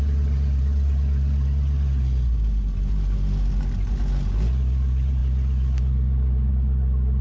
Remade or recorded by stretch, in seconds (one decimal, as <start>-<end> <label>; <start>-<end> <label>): 0.0-7.2 recorded

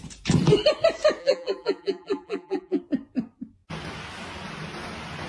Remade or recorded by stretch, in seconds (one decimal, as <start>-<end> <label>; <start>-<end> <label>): 0.0-1.2 recorded; 1.2-2.8 remade; 2.8-5.3 recorded

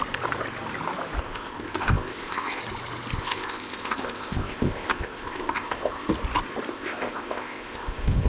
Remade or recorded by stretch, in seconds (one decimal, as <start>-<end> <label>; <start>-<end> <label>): 0.0-1.2 recorded; 1.2-2.6 remade; 2.6-3.2 recorded; 3.2-6.1 remade; 6.1-6.7 recorded; 6.7-8.3 remade

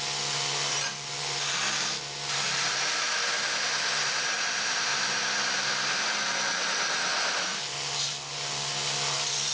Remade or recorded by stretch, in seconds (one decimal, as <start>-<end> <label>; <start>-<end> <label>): 0.0-9.5 recorded